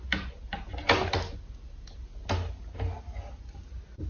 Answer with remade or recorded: recorded